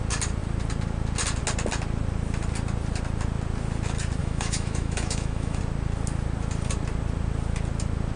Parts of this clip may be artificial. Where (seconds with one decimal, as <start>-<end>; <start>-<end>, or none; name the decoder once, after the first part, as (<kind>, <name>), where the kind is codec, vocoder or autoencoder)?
4.2-5.6 (autoencoder, DAC-VAE)

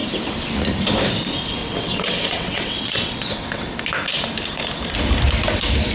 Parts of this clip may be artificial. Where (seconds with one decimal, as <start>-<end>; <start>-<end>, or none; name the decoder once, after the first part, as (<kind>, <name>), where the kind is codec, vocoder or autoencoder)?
1.6-3.7 (vocoder, WaveNeXt)

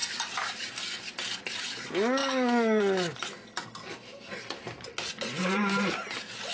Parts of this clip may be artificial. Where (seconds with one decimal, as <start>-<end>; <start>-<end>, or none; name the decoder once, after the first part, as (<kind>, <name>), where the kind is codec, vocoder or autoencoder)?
0.0-0.6 (vocoder, BigVGAN v2); 5.4-5.9